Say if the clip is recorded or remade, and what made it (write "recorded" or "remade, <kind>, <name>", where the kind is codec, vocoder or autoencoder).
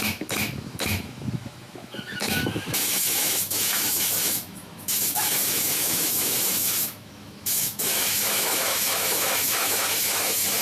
remade, autoencoder, DAC-VAE